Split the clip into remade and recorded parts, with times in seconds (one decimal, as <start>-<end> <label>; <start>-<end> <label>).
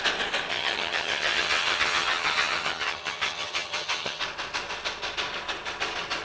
0.0-0.5 recorded; 0.5-4.2 remade; 4.2-6.2 recorded